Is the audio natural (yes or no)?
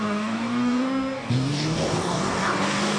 no